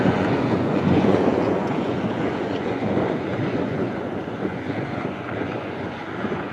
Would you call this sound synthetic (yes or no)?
yes